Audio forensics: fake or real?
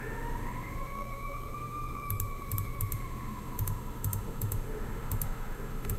fake